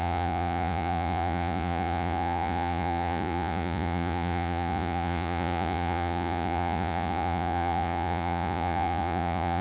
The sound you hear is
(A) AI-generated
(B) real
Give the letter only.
A